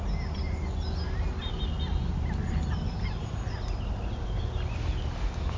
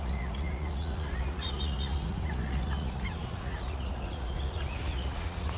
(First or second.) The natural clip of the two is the first